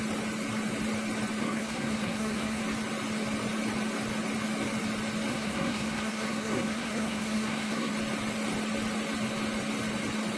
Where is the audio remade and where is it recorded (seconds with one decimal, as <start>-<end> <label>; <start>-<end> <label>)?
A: 0.0-1.4 recorded; 1.4-2.6 remade; 2.6-5.3 recorded; 5.3-7.9 remade; 7.9-10.4 recorded